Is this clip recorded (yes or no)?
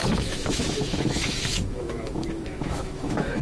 no